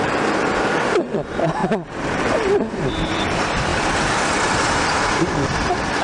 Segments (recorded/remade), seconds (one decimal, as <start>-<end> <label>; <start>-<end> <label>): 0.0-1.6 remade; 1.6-2.2 recorded; 2.2-6.0 remade